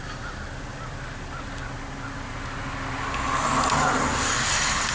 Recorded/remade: recorded